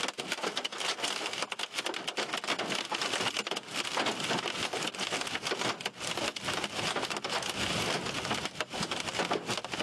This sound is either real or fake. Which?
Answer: real